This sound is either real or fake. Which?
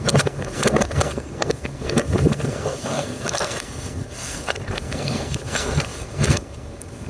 fake